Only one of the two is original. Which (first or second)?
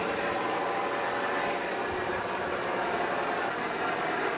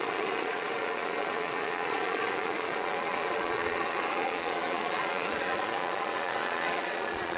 first